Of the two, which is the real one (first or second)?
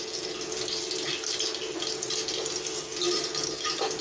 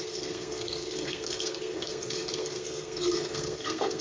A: first